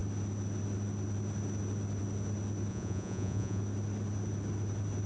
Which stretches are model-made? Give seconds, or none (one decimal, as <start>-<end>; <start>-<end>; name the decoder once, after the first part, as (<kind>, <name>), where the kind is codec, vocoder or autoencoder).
2.7-3.6 (vocoder, Vocos)